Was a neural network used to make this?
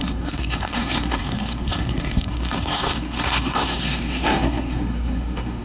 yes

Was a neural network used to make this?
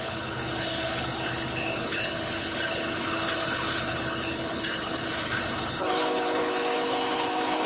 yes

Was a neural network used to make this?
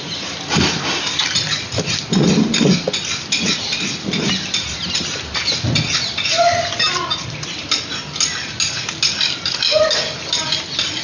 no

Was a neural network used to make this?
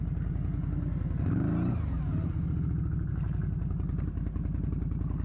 no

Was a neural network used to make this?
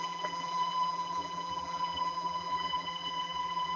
yes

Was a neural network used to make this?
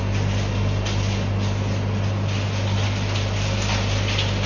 no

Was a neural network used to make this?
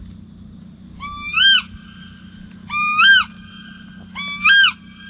no